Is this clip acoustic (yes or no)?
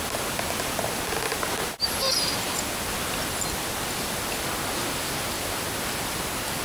yes